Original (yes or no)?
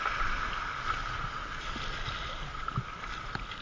yes